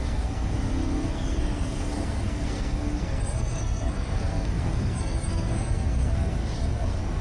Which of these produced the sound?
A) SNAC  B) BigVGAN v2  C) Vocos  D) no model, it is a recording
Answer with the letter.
A